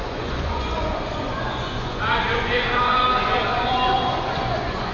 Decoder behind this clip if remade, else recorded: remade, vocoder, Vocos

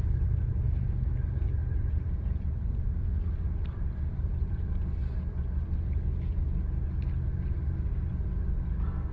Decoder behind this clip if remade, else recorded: recorded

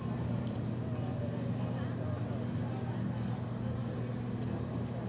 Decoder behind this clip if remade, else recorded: recorded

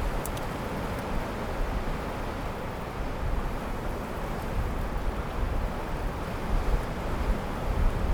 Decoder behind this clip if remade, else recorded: recorded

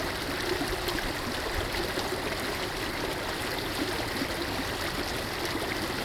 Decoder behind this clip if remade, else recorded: recorded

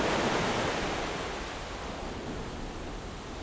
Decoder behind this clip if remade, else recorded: recorded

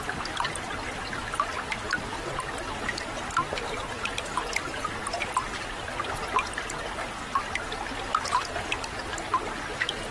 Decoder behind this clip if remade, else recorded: recorded